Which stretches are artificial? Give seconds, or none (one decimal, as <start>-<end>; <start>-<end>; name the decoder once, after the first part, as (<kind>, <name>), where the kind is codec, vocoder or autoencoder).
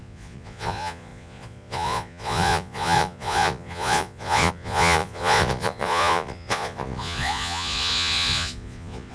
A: 0.0-9.1 (vocoder, Vocos)